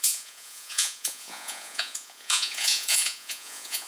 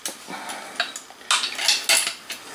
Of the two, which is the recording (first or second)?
second